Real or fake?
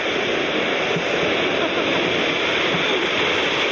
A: real